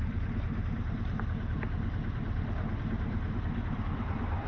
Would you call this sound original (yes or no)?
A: no